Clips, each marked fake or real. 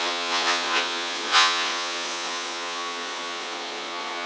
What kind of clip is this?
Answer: fake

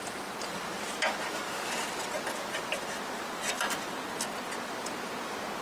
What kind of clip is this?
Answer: real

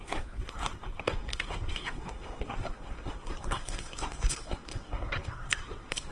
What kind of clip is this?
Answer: fake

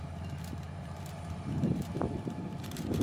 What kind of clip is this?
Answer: fake